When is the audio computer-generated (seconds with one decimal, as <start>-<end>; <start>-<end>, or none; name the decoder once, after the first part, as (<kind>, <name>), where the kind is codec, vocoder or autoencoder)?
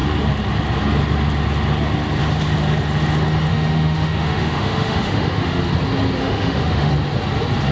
3.5-5.6 (autoencoder, DAC-VAE); 6.2-6.9